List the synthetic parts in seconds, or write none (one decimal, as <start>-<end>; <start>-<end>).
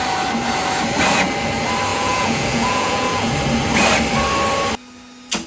1.9-3.3